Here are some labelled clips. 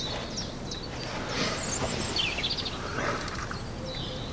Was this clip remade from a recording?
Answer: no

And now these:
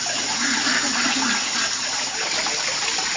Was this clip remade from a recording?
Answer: no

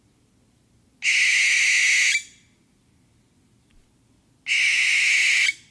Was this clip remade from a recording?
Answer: no